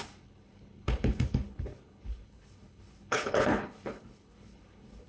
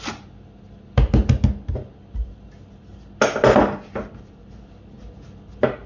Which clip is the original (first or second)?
second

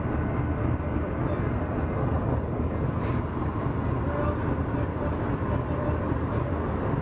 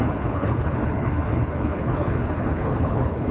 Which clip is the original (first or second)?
first